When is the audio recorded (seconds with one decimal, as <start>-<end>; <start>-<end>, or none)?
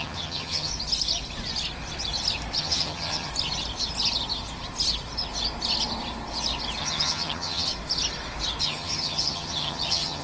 0.7-2.6; 3.3-6.8; 7.7-8.6